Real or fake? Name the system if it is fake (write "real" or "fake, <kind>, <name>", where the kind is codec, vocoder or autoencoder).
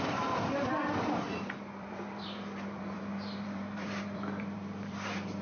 fake, vocoder, BigVGAN v2